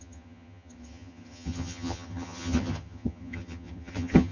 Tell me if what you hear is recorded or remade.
remade